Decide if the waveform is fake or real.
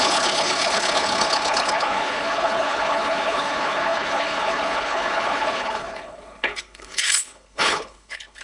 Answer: fake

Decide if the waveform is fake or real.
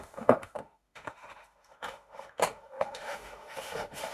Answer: fake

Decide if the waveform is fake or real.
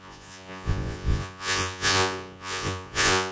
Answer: fake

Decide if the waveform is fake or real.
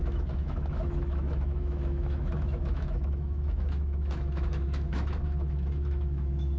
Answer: fake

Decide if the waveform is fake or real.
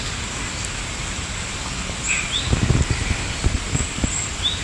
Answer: real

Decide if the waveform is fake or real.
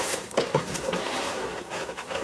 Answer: fake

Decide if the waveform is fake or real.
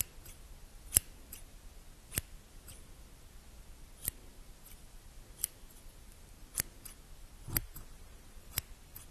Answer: real